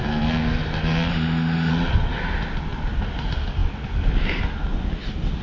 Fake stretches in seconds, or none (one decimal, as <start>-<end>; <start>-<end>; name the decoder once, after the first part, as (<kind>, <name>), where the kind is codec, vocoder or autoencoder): 1.1-1.7 (autoencoder, DAC-VAE)